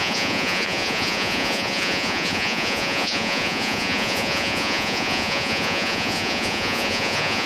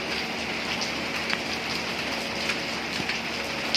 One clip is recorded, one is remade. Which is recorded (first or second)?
second